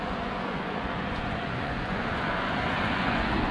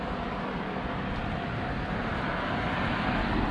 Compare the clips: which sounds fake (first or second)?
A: first